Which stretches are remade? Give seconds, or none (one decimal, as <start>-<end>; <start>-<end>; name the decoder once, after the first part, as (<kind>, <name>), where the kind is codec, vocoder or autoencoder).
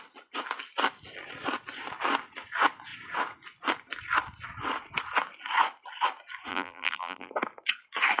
6.5-7.3 (vocoder, BigVGAN v2)